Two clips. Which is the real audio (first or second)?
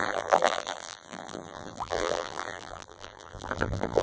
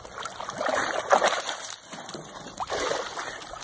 second